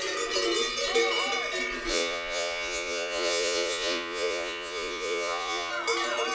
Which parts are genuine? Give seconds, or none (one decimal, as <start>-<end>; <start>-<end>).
0.0-1.9; 5.7-6.3